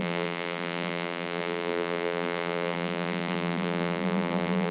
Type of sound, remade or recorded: remade